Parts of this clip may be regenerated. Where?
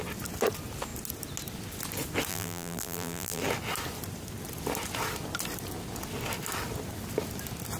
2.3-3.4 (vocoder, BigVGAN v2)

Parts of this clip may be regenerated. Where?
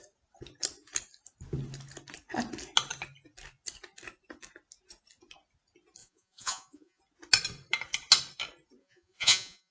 6.0-7.0 (vocoder, Vocos); 8.8-9.7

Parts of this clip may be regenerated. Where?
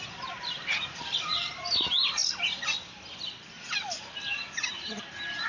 none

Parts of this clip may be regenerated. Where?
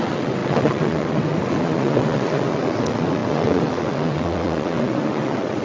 0.0-5.6 (vocoder, WaveNeXt)